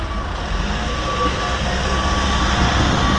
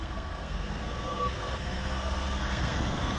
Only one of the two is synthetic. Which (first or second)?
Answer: second